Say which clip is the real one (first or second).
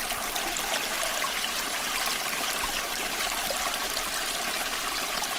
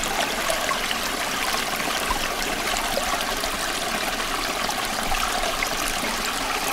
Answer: second